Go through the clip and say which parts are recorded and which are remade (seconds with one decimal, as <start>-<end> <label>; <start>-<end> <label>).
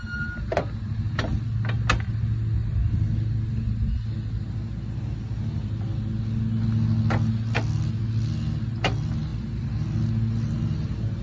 0.0-11.2 recorded